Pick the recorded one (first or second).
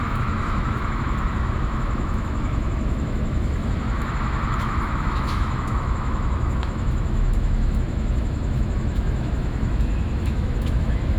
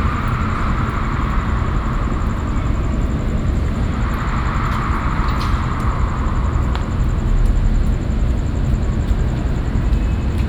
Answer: second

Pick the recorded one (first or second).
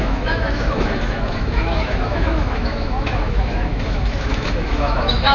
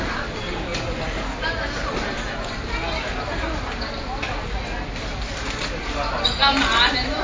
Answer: second